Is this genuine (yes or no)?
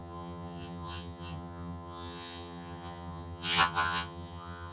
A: no